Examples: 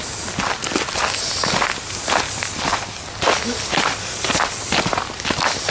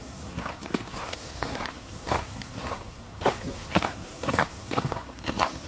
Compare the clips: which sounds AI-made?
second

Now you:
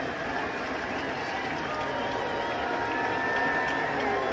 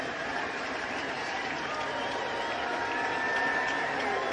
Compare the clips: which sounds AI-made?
second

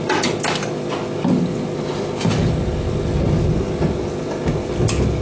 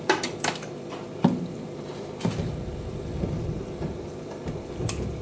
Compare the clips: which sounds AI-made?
second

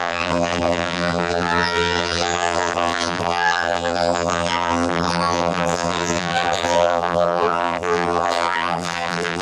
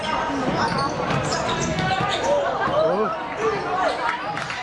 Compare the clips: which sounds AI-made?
first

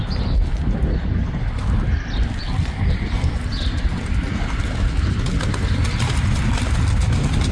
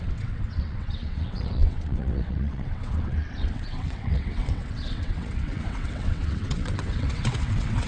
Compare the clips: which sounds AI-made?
second